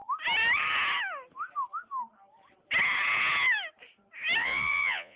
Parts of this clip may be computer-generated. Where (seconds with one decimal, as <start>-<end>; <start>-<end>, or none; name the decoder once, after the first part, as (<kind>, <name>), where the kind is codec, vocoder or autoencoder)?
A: 4.4-5.2 (vocoder, Vocos)